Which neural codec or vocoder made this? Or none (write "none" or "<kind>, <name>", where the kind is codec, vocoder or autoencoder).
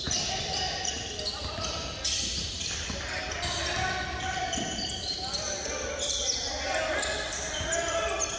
none